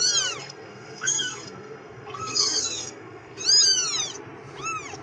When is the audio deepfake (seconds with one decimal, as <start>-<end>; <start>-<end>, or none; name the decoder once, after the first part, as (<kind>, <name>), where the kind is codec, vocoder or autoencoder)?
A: 0.4-3.4 (codec, SNAC)